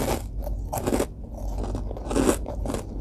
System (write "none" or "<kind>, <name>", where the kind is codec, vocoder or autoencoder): none